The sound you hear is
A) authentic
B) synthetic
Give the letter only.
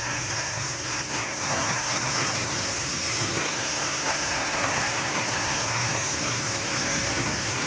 B